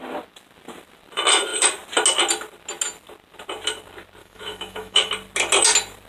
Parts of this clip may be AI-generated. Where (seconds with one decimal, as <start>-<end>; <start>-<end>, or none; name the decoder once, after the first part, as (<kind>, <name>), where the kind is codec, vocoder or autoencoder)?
4.2-5.1 (autoencoder, DAC-VAE)